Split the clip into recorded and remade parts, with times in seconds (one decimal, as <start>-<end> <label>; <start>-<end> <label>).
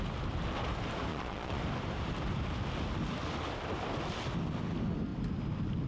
0.0-1.1 recorded; 1.1-1.6 remade; 1.6-5.9 recorded